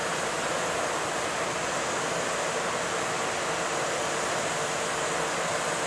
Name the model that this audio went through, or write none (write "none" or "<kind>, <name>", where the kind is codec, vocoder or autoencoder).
none